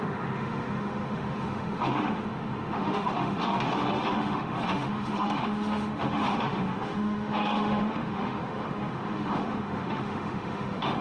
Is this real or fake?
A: fake